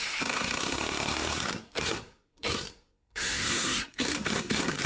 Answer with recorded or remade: remade